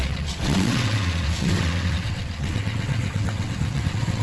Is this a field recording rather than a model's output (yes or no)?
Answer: no